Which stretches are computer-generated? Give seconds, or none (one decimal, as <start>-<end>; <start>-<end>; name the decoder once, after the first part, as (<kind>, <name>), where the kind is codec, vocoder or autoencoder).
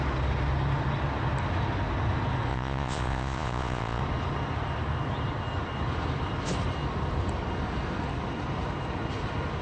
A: 2.5-4.0 (vocoder, Vocos)